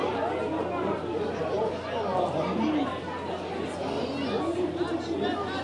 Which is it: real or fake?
real